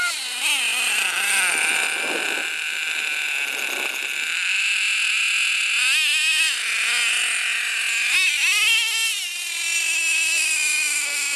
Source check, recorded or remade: recorded